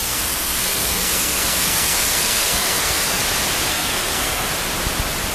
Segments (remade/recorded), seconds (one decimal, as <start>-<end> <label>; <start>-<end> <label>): 0.0-3.2 remade; 3.2-3.7 recorded; 3.7-4.5 remade; 4.5-5.3 recorded